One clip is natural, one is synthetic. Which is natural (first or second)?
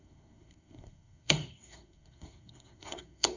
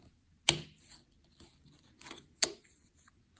second